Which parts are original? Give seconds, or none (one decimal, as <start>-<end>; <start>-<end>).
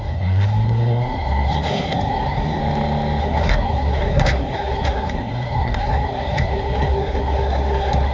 2.6-3.2